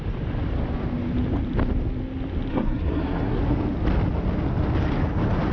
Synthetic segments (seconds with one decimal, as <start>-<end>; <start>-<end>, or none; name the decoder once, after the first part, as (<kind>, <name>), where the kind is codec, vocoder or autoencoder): 2.5-3.4 (codec, SNAC)